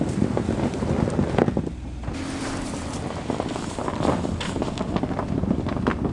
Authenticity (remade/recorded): remade